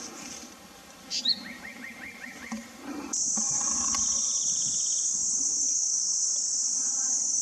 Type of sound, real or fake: fake